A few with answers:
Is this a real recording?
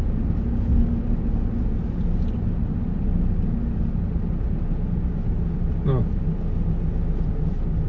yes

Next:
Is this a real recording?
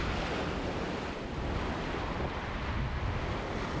yes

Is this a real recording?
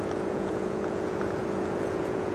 no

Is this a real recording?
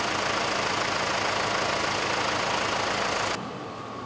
yes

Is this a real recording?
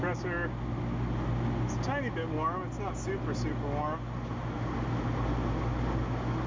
yes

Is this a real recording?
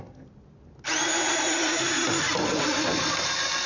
yes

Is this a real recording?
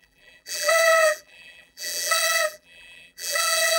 no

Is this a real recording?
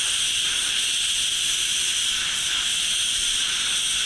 yes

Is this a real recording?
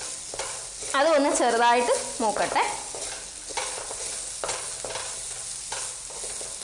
yes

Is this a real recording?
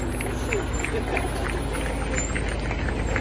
yes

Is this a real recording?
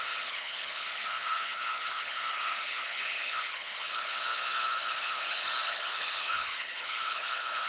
no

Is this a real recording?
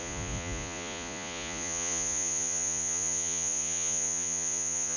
no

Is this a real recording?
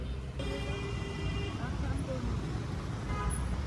yes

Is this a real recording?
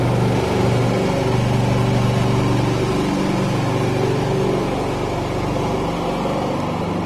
yes